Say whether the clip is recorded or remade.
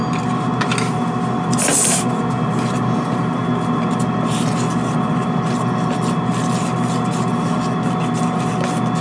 recorded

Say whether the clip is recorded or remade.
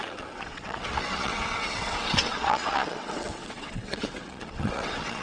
remade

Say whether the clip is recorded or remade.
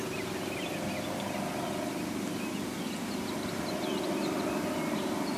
recorded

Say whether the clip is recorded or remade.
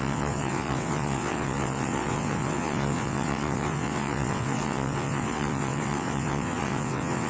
remade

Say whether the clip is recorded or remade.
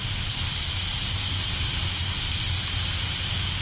recorded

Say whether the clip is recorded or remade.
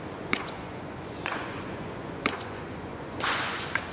remade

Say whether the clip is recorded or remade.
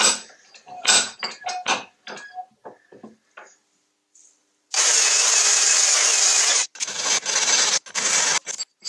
recorded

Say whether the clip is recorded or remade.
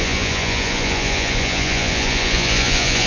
remade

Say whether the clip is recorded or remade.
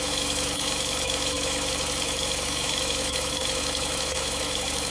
remade